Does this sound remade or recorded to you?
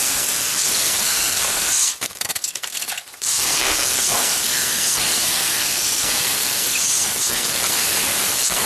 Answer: remade